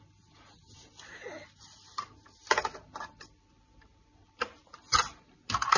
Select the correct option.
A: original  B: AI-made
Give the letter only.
A